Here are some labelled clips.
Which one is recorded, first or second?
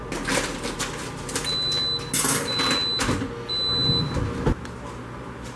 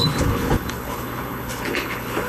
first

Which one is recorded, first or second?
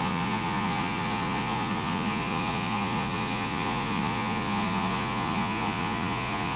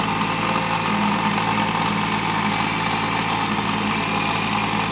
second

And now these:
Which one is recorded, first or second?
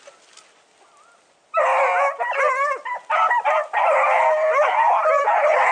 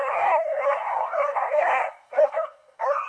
first